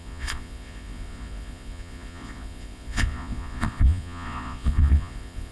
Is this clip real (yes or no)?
no